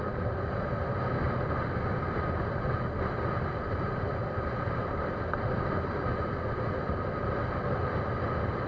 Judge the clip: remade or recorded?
recorded